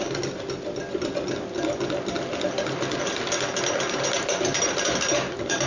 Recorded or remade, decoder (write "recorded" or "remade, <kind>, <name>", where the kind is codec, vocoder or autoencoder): recorded